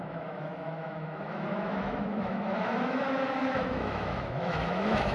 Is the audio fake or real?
fake